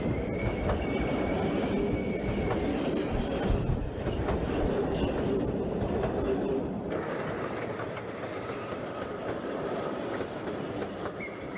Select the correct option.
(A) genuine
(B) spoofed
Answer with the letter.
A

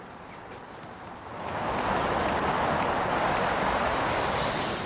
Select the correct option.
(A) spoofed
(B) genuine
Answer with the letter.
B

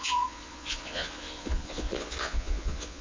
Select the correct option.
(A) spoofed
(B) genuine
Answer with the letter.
A